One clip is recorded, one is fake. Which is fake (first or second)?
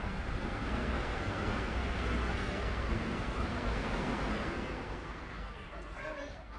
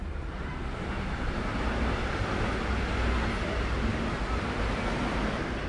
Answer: first